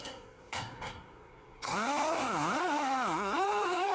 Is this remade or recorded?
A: remade